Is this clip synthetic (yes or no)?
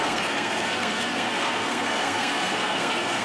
yes